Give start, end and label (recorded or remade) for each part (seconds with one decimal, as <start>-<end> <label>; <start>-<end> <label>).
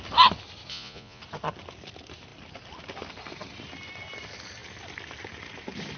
0.0-0.7 recorded; 0.7-1.2 remade; 1.2-6.0 recorded